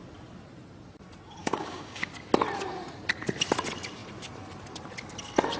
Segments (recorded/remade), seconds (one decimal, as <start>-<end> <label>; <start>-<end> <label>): 0.0-1.4 recorded; 1.4-2.1 remade; 2.1-5.6 recorded